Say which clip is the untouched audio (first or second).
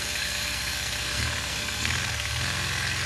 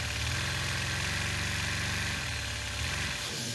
second